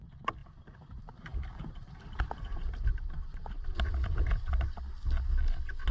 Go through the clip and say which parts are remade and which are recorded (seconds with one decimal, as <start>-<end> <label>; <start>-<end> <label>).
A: 0.0-0.4 recorded; 0.4-3.6 remade; 3.6-5.9 recorded